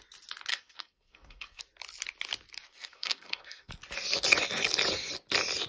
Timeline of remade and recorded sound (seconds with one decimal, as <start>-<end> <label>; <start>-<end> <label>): 0.0-0.5 recorded; 0.5-1.6 remade; 1.6-2.7 recorded; 2.7-3.7 remade; 3.7-5.7 recorded